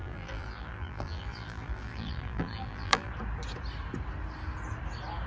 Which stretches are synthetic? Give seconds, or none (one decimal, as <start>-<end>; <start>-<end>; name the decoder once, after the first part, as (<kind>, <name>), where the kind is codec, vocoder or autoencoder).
0.0-3.1 (vocoder, BigVGAN v2)